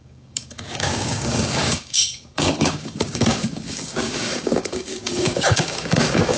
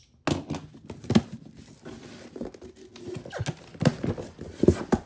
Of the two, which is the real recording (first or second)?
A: second